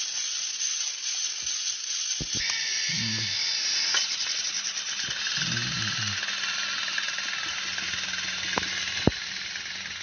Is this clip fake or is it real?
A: real